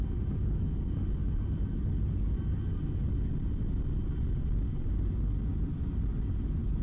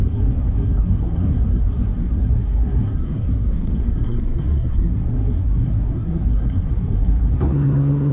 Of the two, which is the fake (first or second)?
second